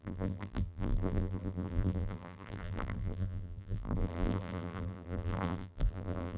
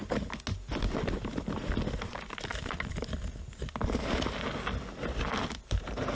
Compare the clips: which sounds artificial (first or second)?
first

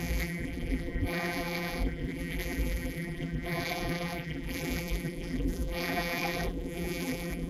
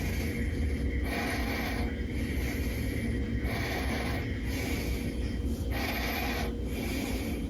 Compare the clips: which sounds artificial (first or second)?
first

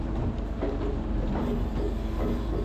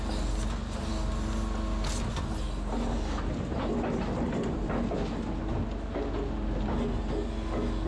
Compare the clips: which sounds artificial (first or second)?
first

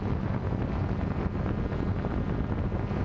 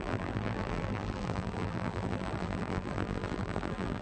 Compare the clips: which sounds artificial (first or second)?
second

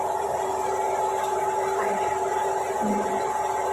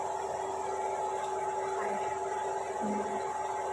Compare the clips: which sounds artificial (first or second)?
first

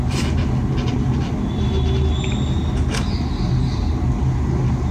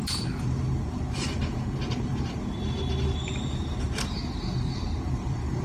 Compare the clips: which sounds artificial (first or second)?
second